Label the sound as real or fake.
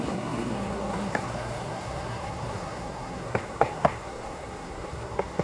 fake